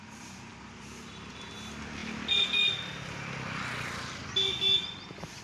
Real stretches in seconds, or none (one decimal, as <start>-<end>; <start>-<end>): 0.0-5.4